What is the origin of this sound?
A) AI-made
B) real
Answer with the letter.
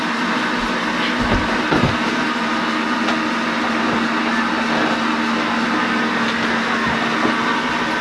B